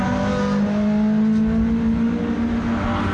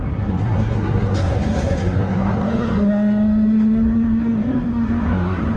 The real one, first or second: first